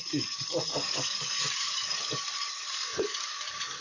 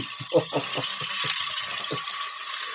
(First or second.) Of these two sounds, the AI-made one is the first